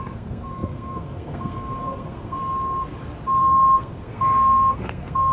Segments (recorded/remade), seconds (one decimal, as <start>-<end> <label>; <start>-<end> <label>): 0.0-2.4 remade; 2.4-3.4 recorded; 3.4-5.3 remade